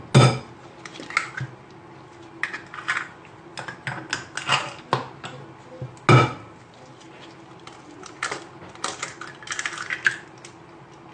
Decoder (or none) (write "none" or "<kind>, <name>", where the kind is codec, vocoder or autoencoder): none